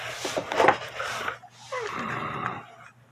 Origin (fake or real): real